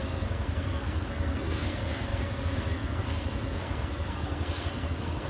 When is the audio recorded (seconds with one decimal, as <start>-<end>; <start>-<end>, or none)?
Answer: none